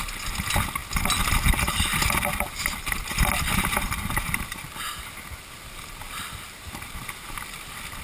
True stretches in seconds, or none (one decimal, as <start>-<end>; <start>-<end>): 0.0-8.0